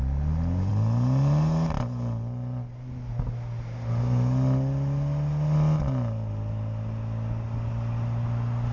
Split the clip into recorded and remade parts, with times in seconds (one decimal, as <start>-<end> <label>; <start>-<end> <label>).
0.0-8.7 recorded